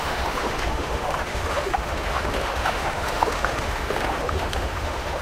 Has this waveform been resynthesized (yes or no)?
yes